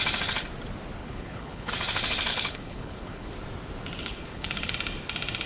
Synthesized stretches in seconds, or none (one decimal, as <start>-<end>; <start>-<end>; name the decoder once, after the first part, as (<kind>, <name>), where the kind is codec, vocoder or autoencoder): 1.0-1.7 (codec, HILCodec); 2.3-3.3; 4.0-4.7